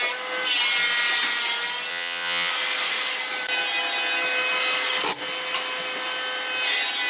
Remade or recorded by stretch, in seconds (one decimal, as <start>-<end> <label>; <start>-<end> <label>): 0.0-1.9 recorded; 1.9-2.5 remade; 2.5-7.1 recorded